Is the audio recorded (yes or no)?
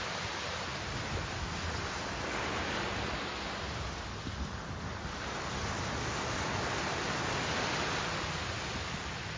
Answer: yes